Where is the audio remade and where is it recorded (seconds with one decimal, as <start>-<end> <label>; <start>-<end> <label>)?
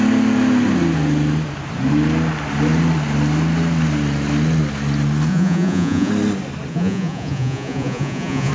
0.0-5.3 recorded; 5.3-6.1 remade; 6.1-6.7 recorded; 6.7-8.5 remade